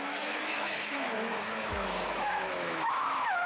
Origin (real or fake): fake